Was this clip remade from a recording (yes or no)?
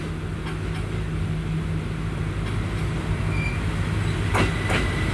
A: no